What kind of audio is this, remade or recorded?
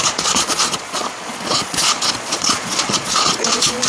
remade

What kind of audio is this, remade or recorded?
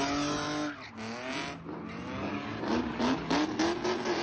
recorded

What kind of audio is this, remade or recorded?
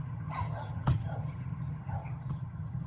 remade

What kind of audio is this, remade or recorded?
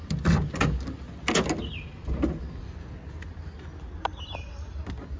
recorded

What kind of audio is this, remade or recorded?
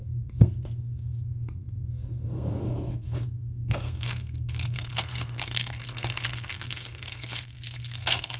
remade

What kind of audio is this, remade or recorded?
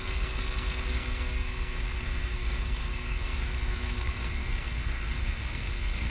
remade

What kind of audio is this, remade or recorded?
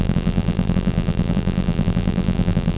remade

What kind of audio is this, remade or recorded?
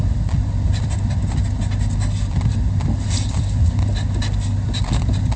recorded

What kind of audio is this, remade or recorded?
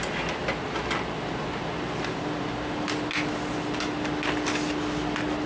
recorded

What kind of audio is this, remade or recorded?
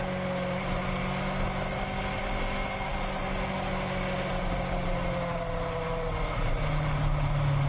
recorded